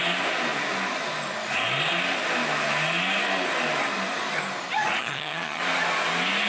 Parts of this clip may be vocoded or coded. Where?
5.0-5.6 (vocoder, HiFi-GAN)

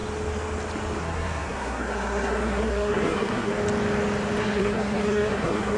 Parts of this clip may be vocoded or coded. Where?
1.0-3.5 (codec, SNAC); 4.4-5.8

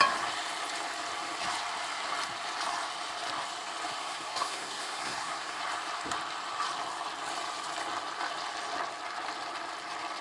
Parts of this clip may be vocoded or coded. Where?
4.0-5.6 (codec, SNAC)